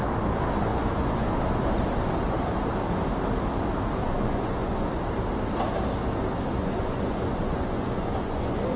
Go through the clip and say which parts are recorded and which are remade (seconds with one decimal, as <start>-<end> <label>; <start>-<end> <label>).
0.0-0.7 recorded; 0.7-1.4 remade; 1.4-4.0 recorded; 4.0-4.9 remade; 4.9-6.6 recorded; 6.6-8.8 remade